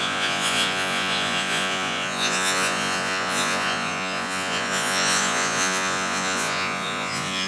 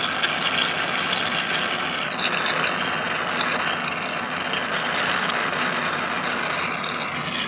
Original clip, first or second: second